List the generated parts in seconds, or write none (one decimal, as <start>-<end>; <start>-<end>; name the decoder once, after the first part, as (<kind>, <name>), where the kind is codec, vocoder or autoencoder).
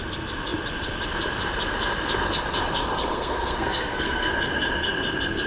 3.1-4.3 (codec, SNAC)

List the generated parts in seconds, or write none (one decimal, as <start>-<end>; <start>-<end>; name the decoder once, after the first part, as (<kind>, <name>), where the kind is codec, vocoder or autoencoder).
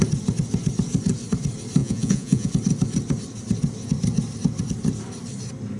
1.8-2.5 (vocoder, Vocos)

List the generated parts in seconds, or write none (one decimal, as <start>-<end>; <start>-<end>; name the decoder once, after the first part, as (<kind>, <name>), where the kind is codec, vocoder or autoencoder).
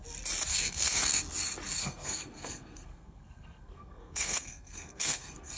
0.5-1.2 (codec, SNAC); 1.8-5.6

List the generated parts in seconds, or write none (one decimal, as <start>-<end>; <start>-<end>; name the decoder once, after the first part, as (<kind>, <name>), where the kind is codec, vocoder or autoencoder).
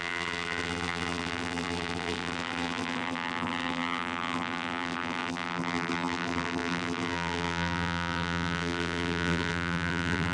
0.0-10.3 (vocoder, BigVGAN v2)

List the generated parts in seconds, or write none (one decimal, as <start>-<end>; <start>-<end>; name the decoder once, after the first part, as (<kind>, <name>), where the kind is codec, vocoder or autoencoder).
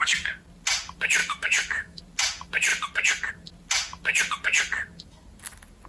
1.2-2.0 (autoencoder, DAC-VAE)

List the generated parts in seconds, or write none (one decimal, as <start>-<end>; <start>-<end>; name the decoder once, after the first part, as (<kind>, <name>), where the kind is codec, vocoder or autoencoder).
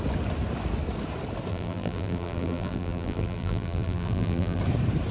1.5-4.6 (vocoder, BigVGAN v2)